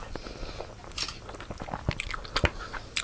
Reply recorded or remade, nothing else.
recorded